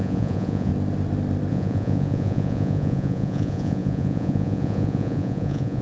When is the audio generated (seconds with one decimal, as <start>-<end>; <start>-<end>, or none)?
0.0-0.7; 1.5-5.8